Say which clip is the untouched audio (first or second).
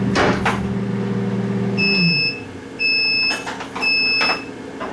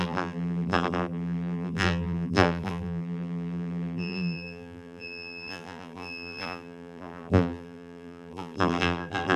first